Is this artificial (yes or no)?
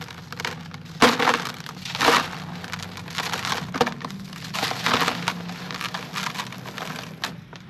no